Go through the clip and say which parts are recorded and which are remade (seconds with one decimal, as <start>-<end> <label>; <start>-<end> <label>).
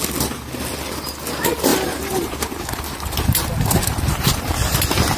0.0-1.7 recorded; 1.7-4.8 remade; 4.8-5.2 recorded